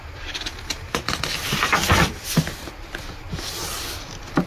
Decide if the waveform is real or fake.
real